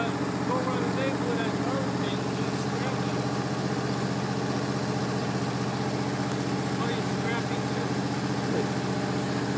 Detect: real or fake real